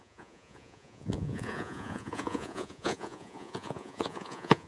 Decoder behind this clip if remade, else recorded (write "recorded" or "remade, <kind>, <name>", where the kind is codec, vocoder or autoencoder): remade, vocoder, Vocos